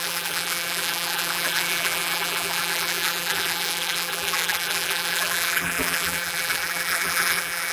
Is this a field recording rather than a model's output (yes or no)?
no